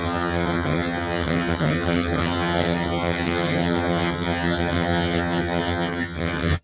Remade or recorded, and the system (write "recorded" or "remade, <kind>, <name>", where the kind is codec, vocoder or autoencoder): remade, vocoder, HiFi-GAN